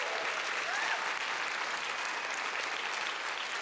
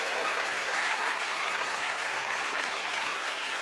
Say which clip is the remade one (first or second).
second